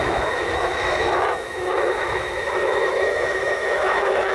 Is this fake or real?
fake